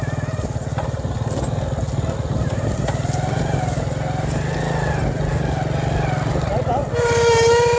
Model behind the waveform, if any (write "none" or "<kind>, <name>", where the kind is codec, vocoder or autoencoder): none